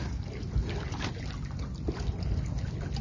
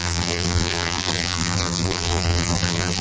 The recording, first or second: first